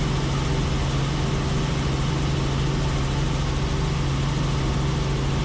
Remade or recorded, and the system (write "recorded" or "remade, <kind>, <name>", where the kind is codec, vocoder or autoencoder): recorded